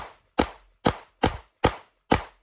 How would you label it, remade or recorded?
recorded